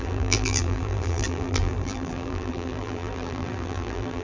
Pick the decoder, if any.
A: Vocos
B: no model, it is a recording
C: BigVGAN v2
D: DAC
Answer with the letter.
C